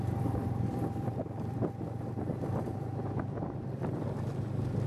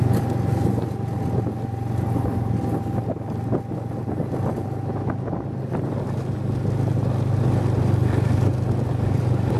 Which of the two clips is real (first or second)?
second